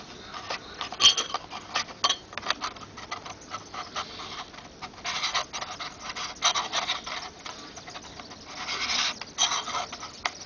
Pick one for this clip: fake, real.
real